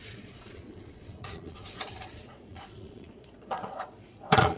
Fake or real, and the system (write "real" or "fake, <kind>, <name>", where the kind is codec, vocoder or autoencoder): fake, vocoder, Vocos